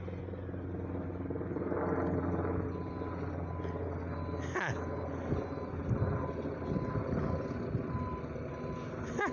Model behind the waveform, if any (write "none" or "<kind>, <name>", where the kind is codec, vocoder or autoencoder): none